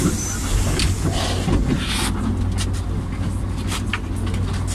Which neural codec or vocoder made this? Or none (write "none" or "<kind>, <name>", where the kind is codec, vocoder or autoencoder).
none